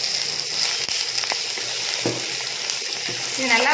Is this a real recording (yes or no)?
yes